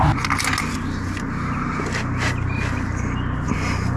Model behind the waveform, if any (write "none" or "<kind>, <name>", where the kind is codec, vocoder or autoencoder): none